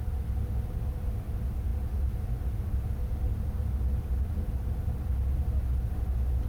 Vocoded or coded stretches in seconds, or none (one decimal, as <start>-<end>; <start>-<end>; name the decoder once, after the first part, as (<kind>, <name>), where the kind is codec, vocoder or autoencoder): none